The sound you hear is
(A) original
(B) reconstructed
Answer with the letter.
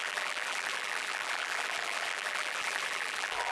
B